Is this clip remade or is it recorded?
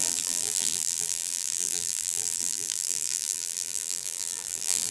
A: remade